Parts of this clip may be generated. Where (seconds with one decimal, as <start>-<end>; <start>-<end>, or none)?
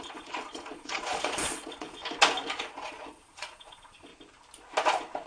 0.0-2.0; 2.6-4.1